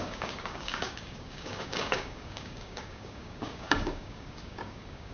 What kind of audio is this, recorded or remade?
remade